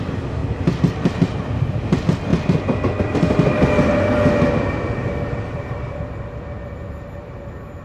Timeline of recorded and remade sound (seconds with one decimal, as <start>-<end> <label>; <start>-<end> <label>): 0.0-7.8 recorded

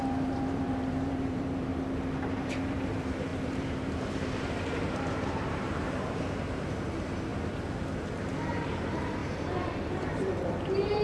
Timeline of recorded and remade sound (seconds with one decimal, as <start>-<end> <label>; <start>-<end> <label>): 0.0-1.7 remade; 1.7-2.3 recorded; 2.3-7.3 remade; 7.3-8.6 recorded; 8.6-9.2 remade; 9.2-9.9 recorded; 9.9-11.0 remade

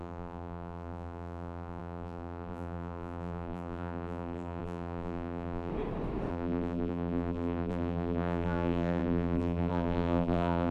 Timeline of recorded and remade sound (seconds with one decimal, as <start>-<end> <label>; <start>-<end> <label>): 0.0-5.7 remade; 5.7-6.3 recorded; 6.3-10.7 remade

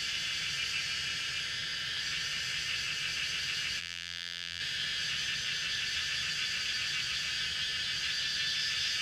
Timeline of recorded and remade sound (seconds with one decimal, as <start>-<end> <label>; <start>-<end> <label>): 0.0-3.8 recorded; 3.8-4.6 remade; 4.6-9.0 recorded

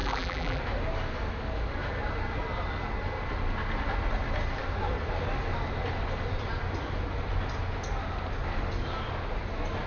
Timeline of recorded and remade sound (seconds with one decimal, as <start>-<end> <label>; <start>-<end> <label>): 0.0-0.6 remade; 0.6-9.9 recorded